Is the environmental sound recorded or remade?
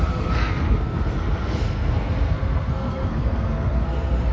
remade